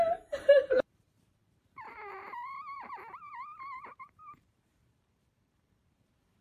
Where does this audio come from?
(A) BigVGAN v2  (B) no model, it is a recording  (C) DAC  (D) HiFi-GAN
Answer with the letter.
A